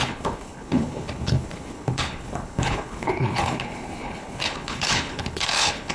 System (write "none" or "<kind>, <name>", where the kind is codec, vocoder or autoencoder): codec, HILCodec